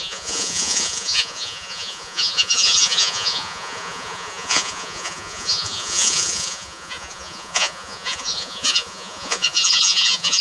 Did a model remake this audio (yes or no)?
yes